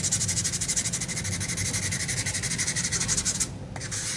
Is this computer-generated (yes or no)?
no